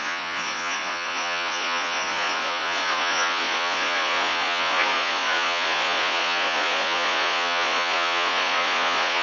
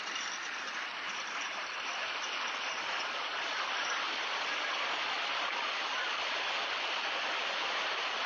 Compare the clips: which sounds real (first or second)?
second